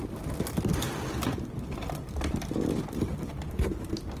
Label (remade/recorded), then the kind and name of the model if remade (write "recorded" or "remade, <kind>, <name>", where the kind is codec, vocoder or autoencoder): recorded